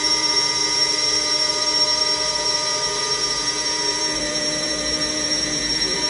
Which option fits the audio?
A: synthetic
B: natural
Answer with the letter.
A